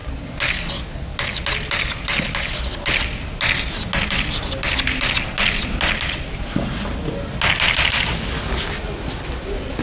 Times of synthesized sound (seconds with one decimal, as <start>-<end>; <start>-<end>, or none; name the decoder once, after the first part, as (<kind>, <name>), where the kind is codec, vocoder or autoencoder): none